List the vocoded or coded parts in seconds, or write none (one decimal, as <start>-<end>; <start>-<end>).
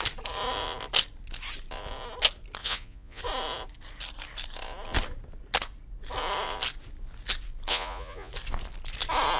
2.6-3.2; 7.7-8.3